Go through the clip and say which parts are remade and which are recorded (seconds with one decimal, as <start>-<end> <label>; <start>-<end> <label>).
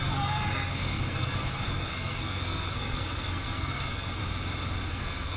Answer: 0.0-4.2 remade; 4.2-4.9 recorded; 4.9-5.4 remade